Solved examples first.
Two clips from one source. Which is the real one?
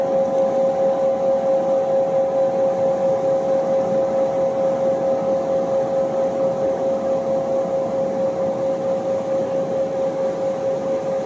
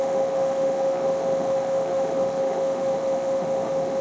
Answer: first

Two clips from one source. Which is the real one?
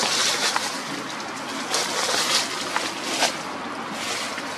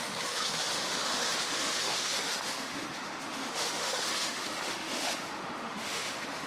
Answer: first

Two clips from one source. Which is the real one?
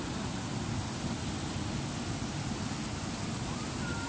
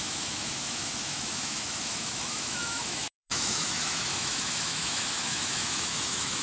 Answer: first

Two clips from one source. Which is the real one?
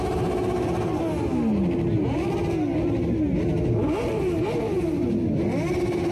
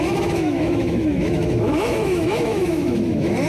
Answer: first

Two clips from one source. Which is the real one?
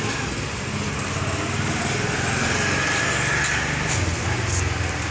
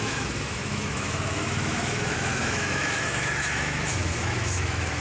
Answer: first